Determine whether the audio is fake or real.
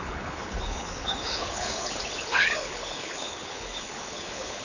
fake